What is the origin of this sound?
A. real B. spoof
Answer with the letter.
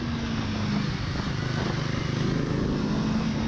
A